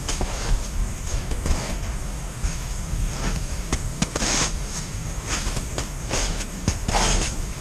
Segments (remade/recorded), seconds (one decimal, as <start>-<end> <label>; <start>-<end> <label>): 0.0-7.6 remade